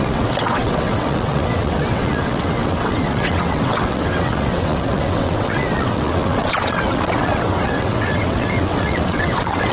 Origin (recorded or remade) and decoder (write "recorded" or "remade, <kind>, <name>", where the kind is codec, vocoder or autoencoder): remade, vocoder, WaveNeXt